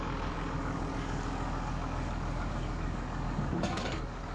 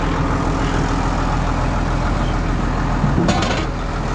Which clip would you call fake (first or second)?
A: first